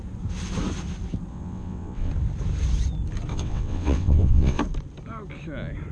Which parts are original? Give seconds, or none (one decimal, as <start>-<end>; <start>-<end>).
0.0-1.3; 2.1-3.3; 4.6-5.9